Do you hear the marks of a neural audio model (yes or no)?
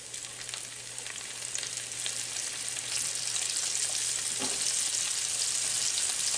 no